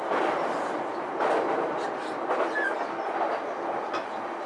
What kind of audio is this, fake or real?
real